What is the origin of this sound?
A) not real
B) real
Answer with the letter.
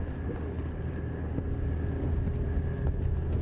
B